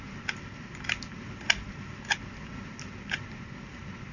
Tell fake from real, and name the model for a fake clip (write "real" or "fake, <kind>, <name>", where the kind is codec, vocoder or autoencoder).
real